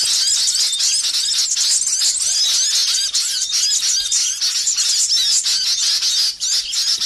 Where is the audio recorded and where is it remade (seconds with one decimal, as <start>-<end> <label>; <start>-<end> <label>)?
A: 0.0-7.1 recorded